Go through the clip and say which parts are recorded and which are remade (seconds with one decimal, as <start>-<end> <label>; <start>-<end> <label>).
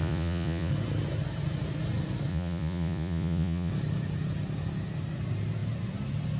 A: 0.0-0.7 remade; 0.7-2.3 recorded; 2.3-3.7 remade; 3.7-6.4 recorded